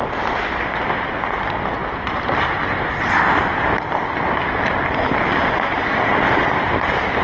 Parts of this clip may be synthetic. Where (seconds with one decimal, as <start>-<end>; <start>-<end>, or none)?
none